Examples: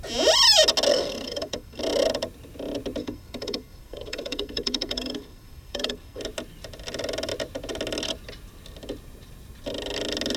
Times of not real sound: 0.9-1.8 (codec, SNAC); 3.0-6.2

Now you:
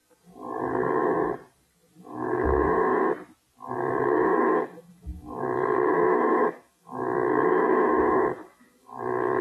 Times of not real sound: 2.0-2.9 (autoencoder, DAC-VAE); 4.0-9.4